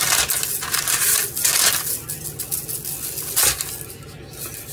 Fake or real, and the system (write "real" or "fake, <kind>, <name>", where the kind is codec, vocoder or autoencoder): real